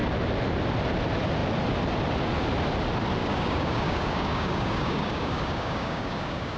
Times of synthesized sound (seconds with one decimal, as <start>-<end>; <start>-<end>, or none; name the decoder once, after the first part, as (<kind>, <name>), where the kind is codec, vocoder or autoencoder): 3.2-6.6 (codec, DAC)